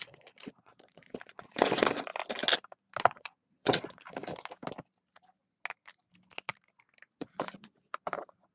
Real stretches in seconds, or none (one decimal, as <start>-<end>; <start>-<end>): 2.1-3.0; 4.3-7.1